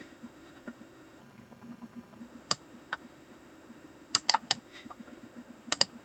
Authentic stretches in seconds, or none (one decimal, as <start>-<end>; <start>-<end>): 1.2-2.2

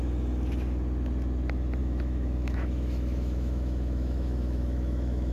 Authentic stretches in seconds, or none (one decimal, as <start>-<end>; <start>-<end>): 0.0-1.8

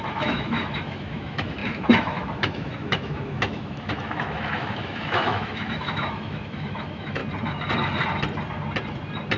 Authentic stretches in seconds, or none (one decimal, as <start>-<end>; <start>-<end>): 7.2-9.4